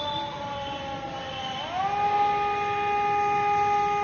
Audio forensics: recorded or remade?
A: recorded